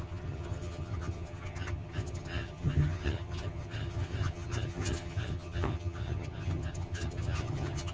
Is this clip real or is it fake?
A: fake